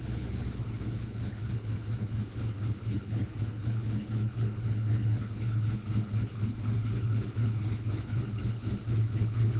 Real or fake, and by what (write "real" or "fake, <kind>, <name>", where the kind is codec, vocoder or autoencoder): fake, codec, HILCodec